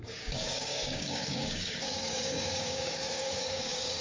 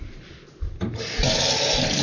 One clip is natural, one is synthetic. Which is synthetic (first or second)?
first